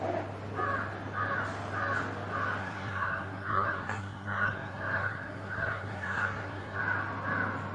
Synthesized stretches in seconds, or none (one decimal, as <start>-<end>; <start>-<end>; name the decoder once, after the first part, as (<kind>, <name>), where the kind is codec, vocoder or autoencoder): 2.6-6.8 (codec, SNAC)